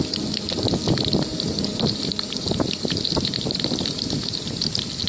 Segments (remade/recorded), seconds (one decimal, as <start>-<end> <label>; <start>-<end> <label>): 0.0-1.3 recorded; 1.3-4.4 remade; 4.4-5.1 recorded